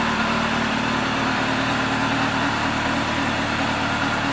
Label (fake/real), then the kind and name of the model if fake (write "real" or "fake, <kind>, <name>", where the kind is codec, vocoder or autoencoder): real